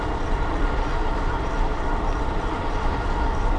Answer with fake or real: real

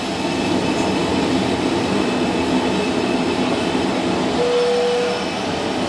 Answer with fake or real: real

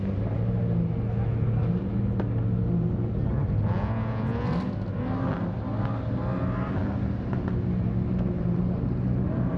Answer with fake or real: real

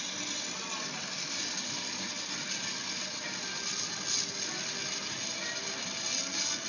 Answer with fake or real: real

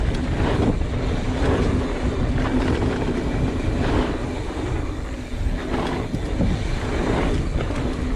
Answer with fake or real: real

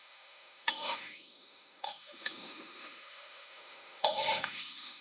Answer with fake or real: fake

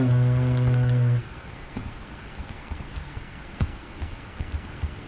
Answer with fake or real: fake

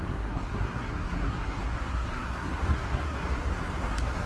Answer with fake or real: fake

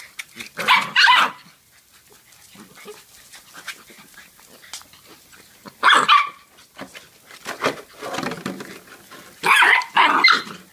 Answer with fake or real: real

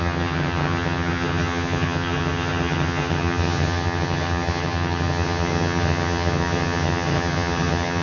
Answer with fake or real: fake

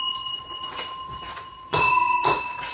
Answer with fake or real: fake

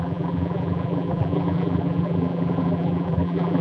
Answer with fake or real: fake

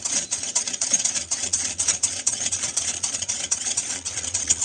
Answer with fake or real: fake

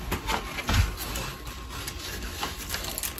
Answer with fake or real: real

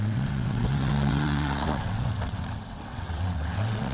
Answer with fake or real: fake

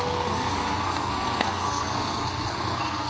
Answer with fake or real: fake